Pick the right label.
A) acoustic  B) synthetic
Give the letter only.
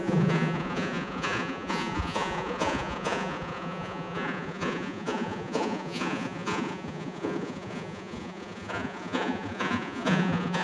B